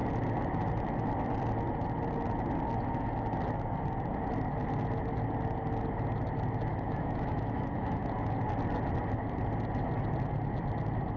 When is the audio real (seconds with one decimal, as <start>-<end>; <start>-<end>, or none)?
0.0-6.7; 8.0-11.2